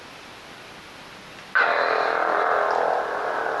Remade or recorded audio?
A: recorded